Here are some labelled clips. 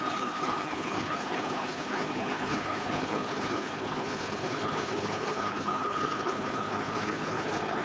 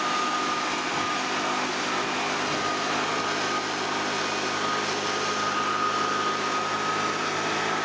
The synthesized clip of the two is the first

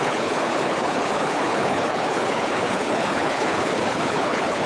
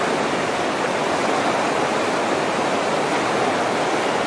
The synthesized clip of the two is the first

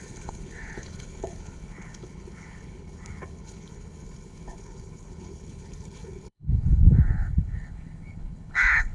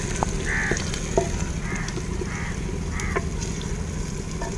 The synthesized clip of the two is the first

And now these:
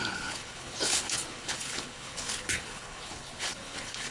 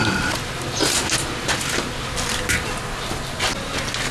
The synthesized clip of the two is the first